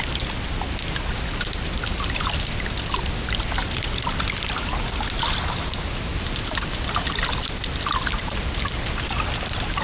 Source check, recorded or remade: recorded